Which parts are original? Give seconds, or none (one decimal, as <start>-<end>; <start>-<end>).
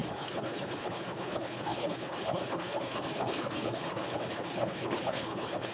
none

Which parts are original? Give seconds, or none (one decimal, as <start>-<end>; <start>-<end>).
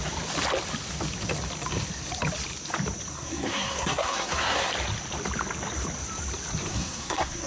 0.0-3.1; 4.7-6.7